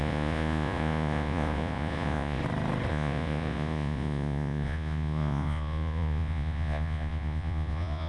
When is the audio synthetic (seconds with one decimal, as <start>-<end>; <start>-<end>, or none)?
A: 0.0-2.4; 2.9-8.1